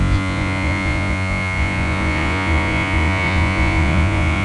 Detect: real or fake fake